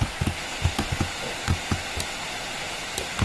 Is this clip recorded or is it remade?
recorded